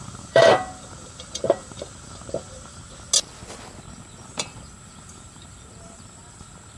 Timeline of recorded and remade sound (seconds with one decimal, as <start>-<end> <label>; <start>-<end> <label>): 0.0-2.8 remade; 2.8-3.9 recorded; 3.9-6.8 remade